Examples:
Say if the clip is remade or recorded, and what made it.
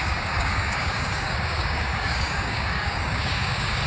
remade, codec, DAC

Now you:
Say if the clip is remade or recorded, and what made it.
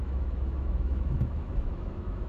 remade, autoencoder, DAC-VAE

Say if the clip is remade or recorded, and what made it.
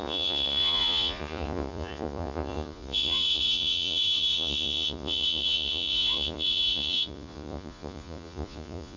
remade, vocoder, Vocos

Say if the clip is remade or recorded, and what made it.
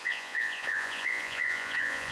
remade, vocoder, Vocos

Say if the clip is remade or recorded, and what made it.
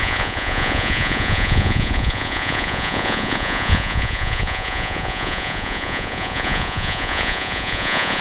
remade, vocoder, Vocos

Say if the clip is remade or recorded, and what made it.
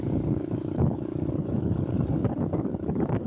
remade, codec, DAC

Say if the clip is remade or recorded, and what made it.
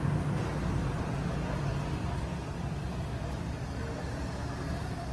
recorded